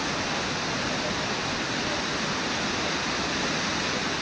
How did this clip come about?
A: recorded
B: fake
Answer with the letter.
A